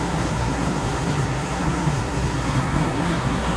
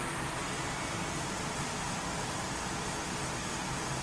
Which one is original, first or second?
second